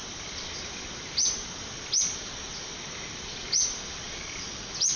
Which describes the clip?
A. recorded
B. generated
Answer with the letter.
A